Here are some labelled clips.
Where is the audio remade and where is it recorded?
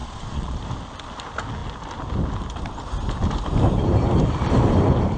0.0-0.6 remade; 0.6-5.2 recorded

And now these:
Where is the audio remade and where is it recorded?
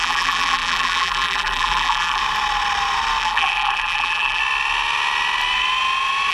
0.0-2.2 remade; 2.2-3.2 recorded; 3.2-4.4 remade; 4.4-6.3 recorded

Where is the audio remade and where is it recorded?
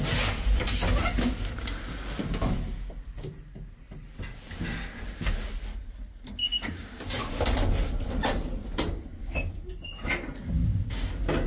0.0-6.4 recorded; 6.4-7.0 remade; 7.0-9.2 recorded; 9.2-10.1 remade; 10.1-11.5 recorded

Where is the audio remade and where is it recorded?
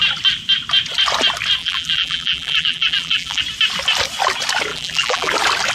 0.0-1.6 recorded; 1.6-3.4 remade; 3.4-4.7 recorded; 4.7-5.3 remade; 5.3-5.7 recorded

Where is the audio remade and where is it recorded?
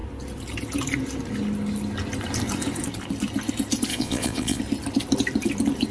0.0-3.9 recorded; 3.9-4.6 remade; 4.6-5.9 recorded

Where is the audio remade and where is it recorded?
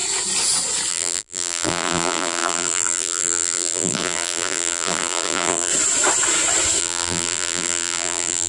0.0-0.9 recorded; 0.9-5.7 remade; 5.7-6.8 recorded; 6.8-8.5 remade